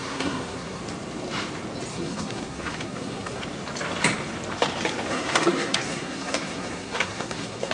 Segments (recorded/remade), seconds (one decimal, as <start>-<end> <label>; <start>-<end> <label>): 0.0-0.8 remade; 0.8-1.9 recorded; 1.9-3.4 remade; 3.4-5.1 recorded; 5.1-7.7 remade